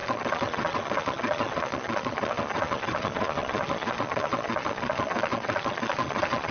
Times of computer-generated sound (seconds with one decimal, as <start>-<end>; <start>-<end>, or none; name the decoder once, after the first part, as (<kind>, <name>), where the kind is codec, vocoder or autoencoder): 0.0-6.5 (vocoder, Vocos)